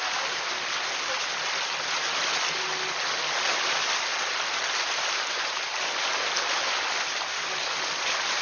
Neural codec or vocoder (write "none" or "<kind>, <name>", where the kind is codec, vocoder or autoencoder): none